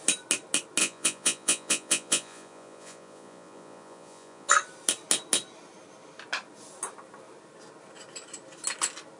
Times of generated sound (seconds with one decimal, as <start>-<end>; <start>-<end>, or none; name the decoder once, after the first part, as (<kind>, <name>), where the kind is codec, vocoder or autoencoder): 0.8-4.5 (vocoder, Vocos)